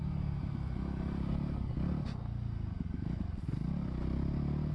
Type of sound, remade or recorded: recorded